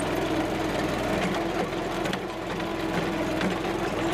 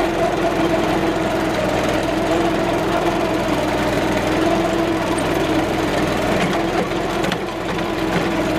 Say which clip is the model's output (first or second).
second